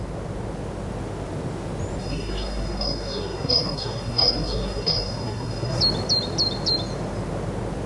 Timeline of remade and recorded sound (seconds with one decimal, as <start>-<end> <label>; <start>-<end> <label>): 0.0-2.0 recorded; 2.0-5.8 remade; 5.8-7.9 recorded